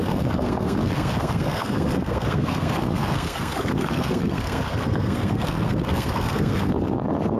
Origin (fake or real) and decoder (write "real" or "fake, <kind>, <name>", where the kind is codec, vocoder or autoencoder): fake, codec, SNAC